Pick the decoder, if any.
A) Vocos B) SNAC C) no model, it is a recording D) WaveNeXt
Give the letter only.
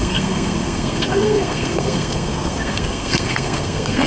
B